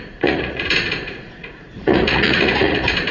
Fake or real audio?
fake